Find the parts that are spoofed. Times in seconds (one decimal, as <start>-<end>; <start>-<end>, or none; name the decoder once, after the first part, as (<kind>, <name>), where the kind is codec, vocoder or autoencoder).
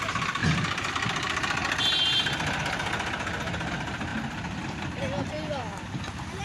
0.4-0.9 (vocoder, BigVGAN v2)